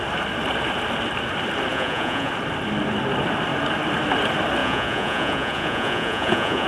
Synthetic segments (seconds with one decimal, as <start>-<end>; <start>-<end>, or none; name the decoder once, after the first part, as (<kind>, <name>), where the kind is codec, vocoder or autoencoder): 1.7-2.3 (vocoder, Vocos); 4.6-6.7